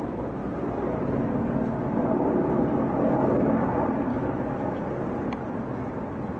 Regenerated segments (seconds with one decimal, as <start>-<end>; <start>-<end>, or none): 4.1-4.8